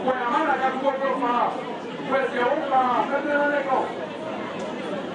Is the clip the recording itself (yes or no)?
yes